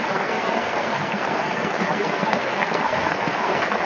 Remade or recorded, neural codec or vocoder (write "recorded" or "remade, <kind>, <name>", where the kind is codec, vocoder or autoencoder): remade, codec, SNAC